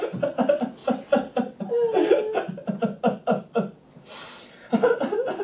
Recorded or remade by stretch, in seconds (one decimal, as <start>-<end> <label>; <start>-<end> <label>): 0.0-5.4 recorded